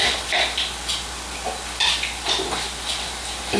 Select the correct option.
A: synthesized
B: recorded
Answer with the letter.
B